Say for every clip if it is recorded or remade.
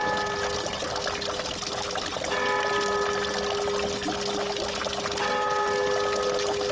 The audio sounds recorded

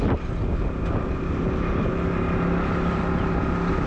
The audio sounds recorded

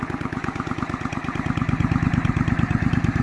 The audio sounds recorded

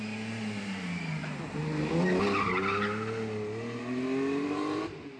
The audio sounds recorded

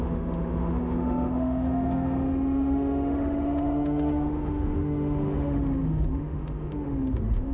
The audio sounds remade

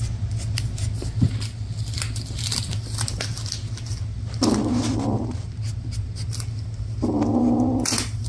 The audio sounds recorded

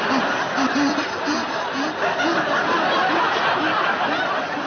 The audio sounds recorded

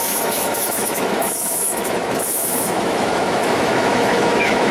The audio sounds remade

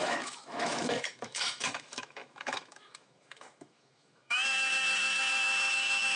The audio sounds remade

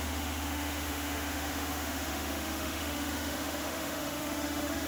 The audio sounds remade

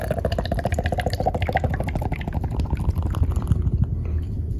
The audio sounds recorded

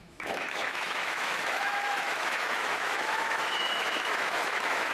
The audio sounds remade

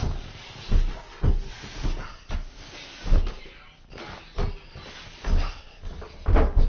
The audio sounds recorded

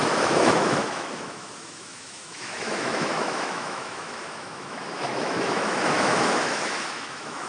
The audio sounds remade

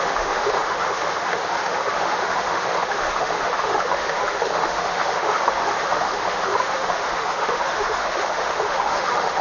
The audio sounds remade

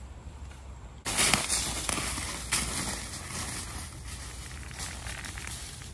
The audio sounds recorded